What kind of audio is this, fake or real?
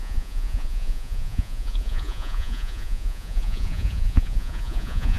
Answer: fake